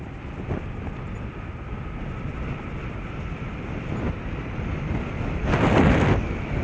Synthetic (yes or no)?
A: no